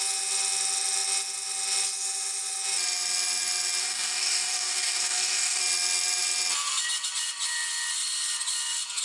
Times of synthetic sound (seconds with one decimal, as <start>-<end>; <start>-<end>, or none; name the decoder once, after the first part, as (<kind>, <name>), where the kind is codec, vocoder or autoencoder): 3.8-5.6 (codec, DAC)